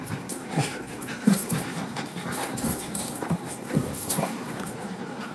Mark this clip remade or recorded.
remade